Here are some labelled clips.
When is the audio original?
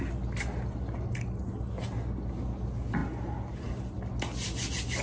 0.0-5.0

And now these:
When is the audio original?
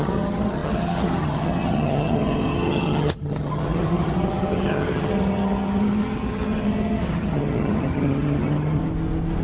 8.8-9.4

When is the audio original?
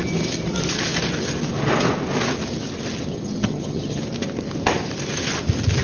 0.0-3.1; 4.0-5.8